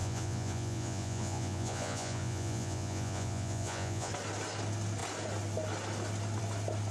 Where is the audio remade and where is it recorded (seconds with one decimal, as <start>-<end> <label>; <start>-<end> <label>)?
0.0-4.1 remade; 4.1-6.9 recorded